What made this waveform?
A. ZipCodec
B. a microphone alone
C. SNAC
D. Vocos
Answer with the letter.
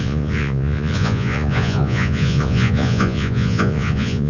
D